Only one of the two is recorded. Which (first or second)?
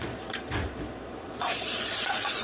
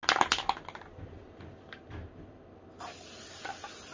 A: second